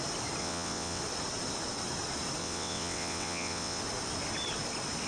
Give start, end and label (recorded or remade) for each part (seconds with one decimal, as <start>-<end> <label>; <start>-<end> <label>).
0.0-0.4 recorded; 0.4-1.0 remade; 1.0-2.4 recorded; 2.4-3.8 remade; 3.8-5.1 recorded